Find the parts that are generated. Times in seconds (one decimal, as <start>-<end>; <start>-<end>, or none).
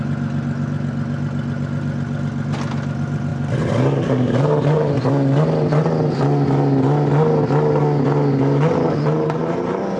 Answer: 3.3-5.1